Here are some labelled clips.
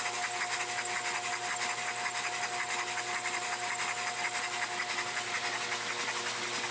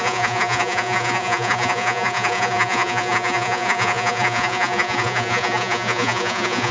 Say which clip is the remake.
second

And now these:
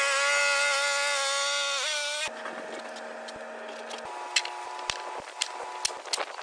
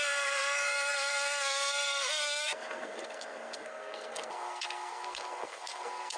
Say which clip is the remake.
second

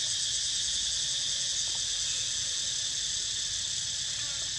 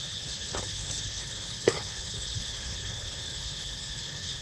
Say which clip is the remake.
second